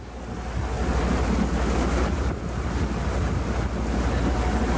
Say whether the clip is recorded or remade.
recorded